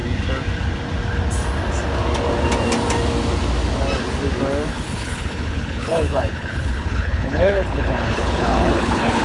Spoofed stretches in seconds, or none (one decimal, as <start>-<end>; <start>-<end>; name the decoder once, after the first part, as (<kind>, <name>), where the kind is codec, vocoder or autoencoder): 4.7-9.2 (codec, HILCodec)